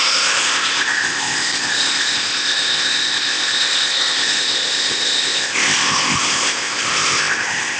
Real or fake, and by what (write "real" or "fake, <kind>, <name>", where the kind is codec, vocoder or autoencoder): fake, codec, ZipCodec